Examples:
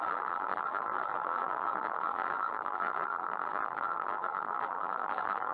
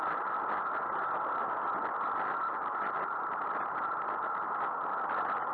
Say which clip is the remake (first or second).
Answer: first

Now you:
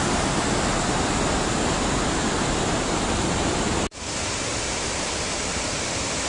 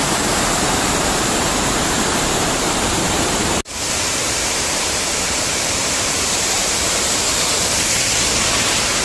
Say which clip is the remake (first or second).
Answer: second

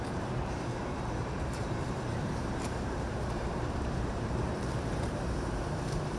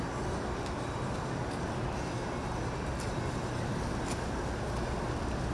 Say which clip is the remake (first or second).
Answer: first